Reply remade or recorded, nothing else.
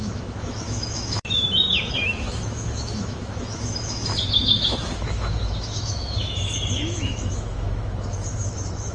remade